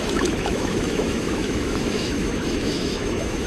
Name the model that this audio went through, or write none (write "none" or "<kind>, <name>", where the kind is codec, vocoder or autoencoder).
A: autoencoder, DAC-VAE